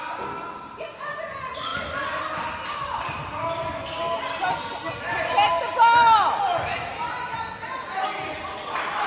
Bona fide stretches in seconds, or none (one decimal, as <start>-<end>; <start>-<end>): 0.0-9.1

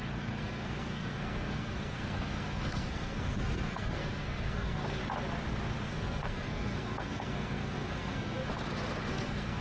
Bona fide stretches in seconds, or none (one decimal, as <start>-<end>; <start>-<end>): 5.0-5.8; 8.5-9.1

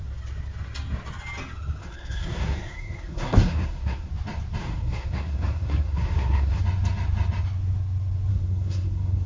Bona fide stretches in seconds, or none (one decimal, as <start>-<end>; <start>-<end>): 0.0-1.8; 4.1-4.6; 6.6-8.3